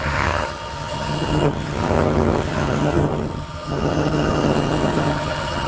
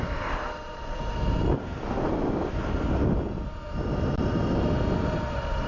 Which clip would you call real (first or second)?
second